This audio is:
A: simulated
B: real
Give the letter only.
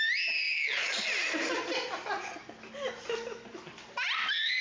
B